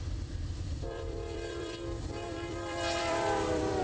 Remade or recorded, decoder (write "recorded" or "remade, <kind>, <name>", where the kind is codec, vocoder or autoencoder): remade, vocoder, BigVGAN v2